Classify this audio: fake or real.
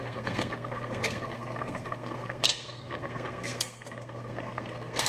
fake